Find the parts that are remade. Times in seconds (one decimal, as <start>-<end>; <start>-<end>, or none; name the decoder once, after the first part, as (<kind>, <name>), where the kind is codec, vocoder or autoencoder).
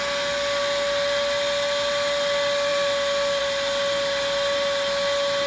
none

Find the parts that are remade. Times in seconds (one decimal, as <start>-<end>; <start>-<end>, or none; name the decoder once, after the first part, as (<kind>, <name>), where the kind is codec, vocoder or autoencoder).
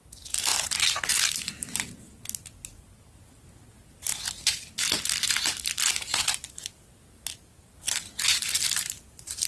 none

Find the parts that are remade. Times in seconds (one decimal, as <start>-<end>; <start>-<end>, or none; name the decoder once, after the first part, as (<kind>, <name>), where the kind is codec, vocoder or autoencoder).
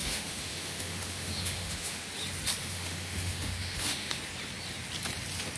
0.0-2.1 (autoencoder, DAC-VAE); 2.6-4.2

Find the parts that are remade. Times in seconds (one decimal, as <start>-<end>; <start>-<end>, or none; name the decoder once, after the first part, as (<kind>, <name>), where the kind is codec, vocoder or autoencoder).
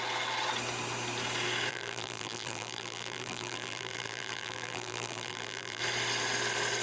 1.7-5.8 (vocoder, BigVGAN v2)